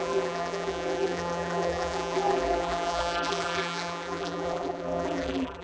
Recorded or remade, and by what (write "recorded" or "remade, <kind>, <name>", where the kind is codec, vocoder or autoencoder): remade, vocoder, BigVGAN v2